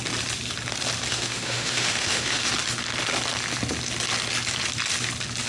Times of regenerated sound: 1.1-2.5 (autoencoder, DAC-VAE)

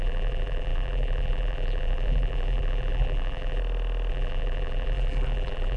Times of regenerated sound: 0.0-3.6 (vocoder, BigVGAN v2); 4.1-5.8